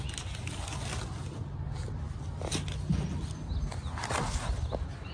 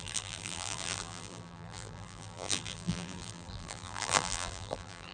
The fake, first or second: second